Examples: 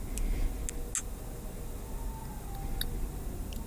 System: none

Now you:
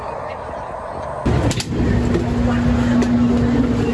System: none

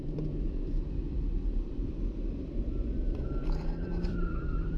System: vocoder, BigVGAN v2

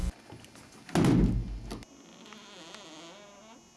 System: none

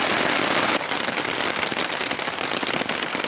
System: none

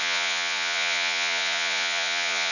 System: vocoder, Vocos